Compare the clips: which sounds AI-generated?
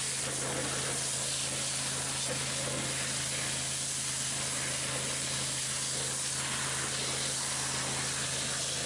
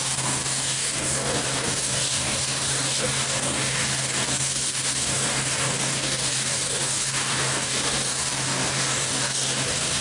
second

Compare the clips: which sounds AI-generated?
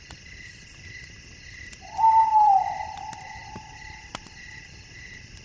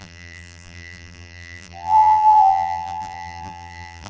second